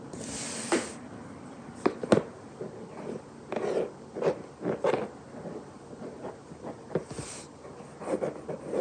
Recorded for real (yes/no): yes